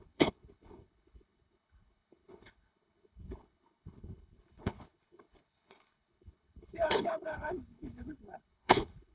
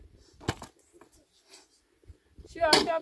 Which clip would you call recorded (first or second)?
second